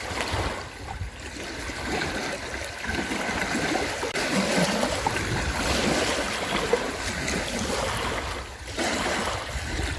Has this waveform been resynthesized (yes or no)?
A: no